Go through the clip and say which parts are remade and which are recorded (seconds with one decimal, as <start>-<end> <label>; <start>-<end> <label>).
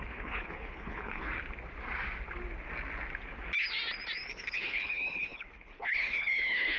0.0-1.3 remade; 1.3-4.3 recorded; 4.3-6.8 remade